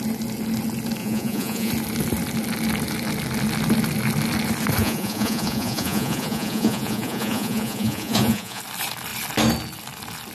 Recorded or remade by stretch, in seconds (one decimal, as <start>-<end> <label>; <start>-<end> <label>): 0.0-1.0 recorded; 1.0-1.7 remade; 1.7-4.8 recorded; 4.8-8.6 remade; 8.6-10.3 recorded